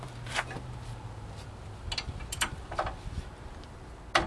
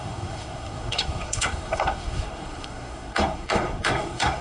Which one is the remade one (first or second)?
second